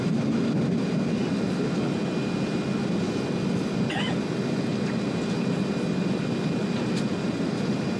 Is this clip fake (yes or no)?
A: no